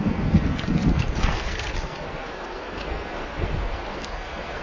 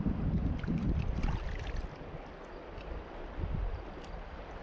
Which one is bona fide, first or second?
second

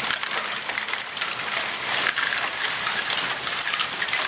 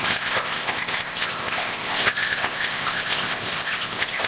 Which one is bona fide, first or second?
first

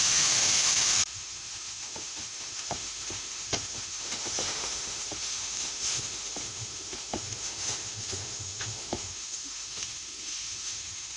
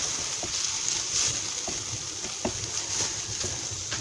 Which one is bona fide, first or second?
second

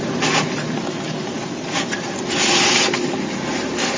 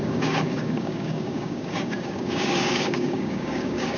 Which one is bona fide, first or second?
first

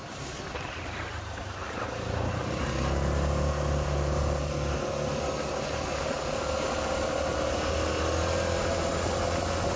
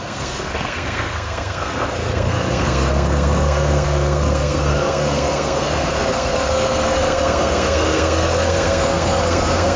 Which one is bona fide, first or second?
first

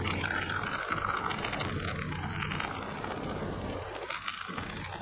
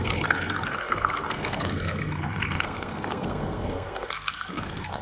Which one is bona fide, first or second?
first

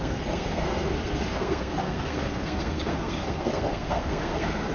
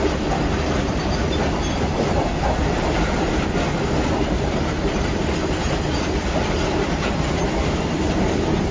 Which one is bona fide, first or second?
second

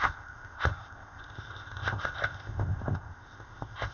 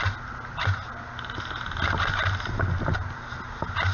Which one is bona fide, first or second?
second